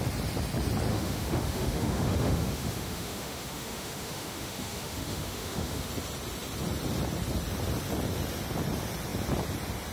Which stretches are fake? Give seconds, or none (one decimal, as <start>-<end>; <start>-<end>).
0.9-5.9